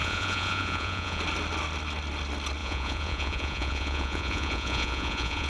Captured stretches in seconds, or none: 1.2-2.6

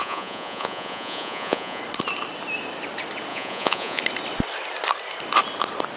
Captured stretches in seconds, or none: 1.8-3.3; 4.0-6.0

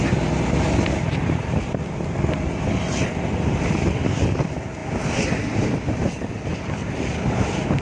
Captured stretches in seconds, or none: 0.0-7.8

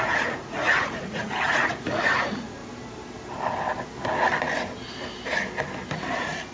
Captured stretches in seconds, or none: 2.6-6.5

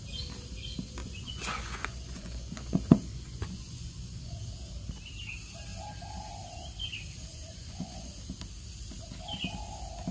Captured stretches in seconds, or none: 0.0-1.0; 4.4-7.3; 8.1-10.1

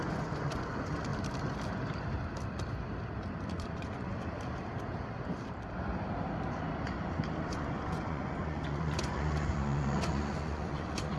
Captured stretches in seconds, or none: 1.1-3.5; 4.1-7.5

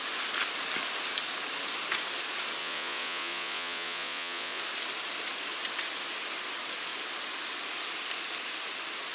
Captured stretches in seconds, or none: 0.0-2.6; 4.6-9.1